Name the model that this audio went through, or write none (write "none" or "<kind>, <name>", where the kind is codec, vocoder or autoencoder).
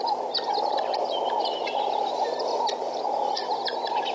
vocoder, BigVGAN v2